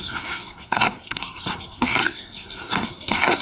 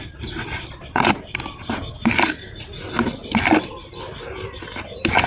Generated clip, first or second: first